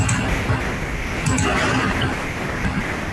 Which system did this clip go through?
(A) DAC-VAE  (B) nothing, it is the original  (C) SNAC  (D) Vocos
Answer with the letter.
B